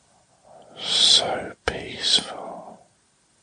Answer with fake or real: fake